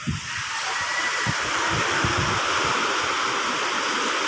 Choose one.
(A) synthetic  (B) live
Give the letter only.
B